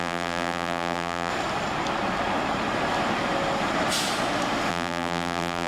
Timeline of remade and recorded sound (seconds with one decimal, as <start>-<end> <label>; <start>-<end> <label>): 0.0-1.3 remade; 1.3-4.7 recorded; 4.7-5.7 remade